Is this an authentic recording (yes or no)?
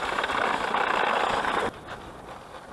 yes